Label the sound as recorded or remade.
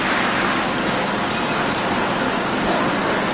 recorded